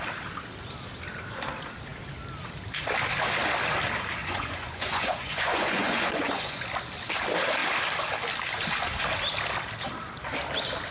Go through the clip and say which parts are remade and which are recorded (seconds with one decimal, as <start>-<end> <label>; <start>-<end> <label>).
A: 0.0-4.2 recorded; 4.2-6.6 remade; 6.6-10.9 recorded